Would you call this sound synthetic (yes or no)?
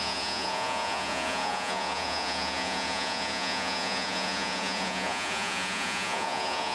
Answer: yes